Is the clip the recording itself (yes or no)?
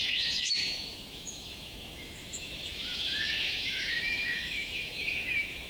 no